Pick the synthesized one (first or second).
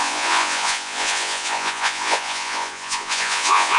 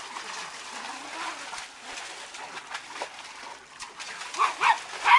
first